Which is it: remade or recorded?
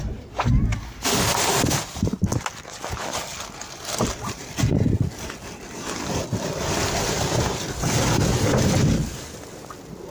recorded